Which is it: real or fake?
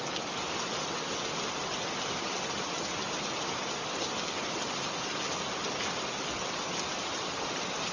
real